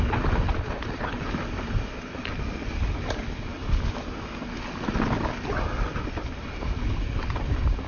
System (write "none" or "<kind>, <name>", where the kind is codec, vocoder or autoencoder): none